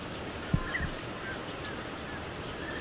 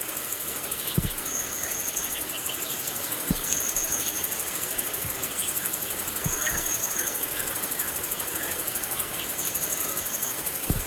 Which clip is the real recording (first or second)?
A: first